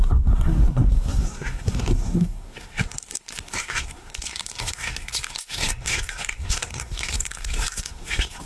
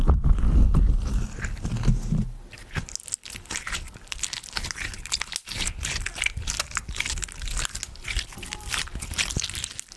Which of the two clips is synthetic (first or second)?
first